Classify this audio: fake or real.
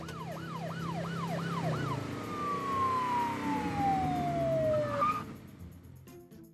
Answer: real